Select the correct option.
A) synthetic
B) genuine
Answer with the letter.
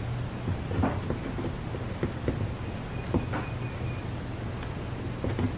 B